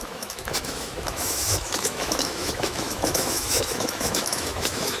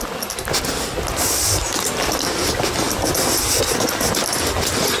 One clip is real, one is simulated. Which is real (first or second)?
second